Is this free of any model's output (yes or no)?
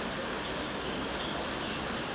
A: yes